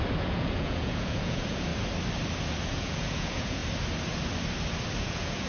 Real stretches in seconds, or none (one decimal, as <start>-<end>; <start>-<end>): 1.7-2.6; 3.6-5.0